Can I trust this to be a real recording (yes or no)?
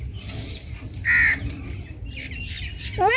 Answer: yes